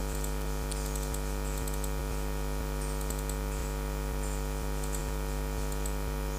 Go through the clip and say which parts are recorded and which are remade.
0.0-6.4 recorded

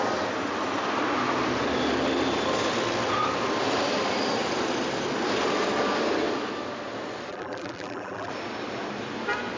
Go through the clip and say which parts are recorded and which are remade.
0.0-7.3 recorded; 7.3-8.3 remade; 8.3-9.6 recorded

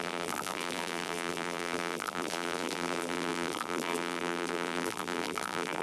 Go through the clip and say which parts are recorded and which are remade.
0.0-5.8 remade

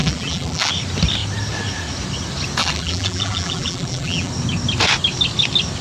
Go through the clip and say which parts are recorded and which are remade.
0.0-0.7 remade; 0.7-2.6 recorded; 2.6-4.3 remade; 4.3-5.8 recorded

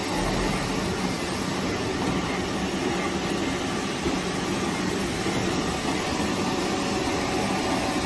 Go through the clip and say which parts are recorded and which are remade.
0.0-8.1 recorded

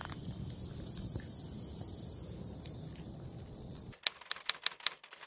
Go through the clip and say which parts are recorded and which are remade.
0.0-3.2 remade; 3.2-5.3 recorded

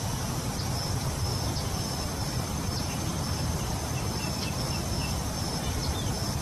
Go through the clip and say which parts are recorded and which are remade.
0.0-6.4 remade

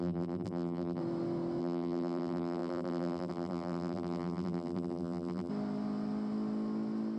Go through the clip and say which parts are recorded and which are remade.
0.0-1.0 remade; 1.0-1.6 recorded; 1.6-5.5 remade; 5.5-7.2 recorded